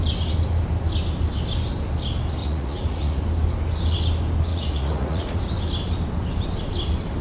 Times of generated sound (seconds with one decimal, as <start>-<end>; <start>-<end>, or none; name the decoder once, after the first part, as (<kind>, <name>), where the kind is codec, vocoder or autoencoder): 2.4-3.2 (vocoder, Vocos); 4.5-5.4